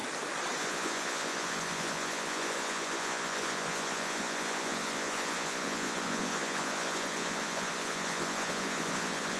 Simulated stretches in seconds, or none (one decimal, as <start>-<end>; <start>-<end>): 0.6-9.4